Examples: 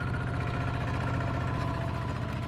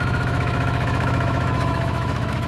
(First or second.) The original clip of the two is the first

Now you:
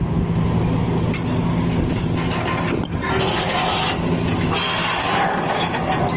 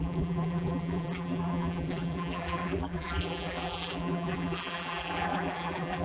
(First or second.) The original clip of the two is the first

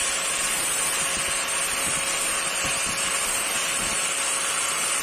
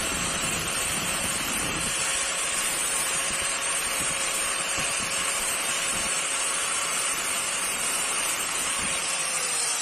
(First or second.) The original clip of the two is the first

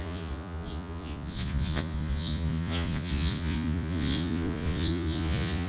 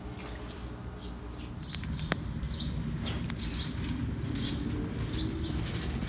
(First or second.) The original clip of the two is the second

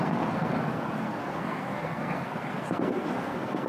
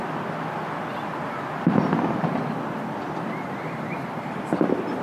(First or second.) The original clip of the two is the second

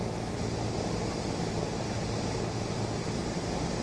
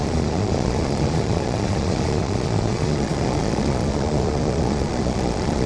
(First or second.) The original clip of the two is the first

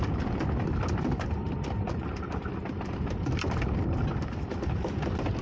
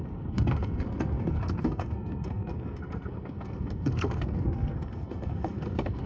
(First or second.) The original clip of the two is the first